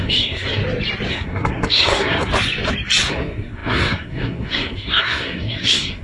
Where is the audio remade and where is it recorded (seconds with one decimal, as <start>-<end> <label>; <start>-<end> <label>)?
0.0-0.6 remade; 0.6-1.1 recorded; 1.1-2.3 remade; 2.3-3.1 recorded; 3.1-6.0 remade